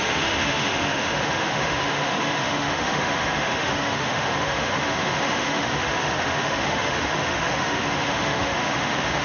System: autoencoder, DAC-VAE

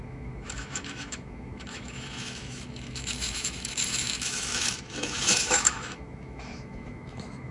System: autoencoder, DAC-VAE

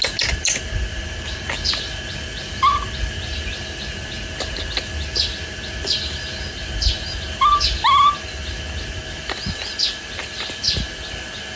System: none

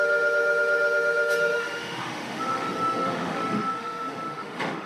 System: autoencoder, DAC-VAE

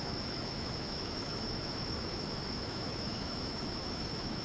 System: autoencoder, DAC-VAE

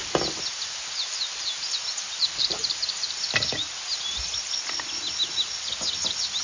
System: none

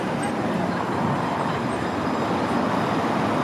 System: none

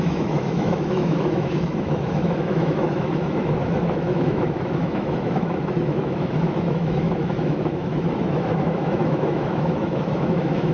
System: autoencoder, DAC-VAE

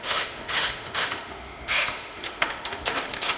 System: autoencoder, DAC-VAE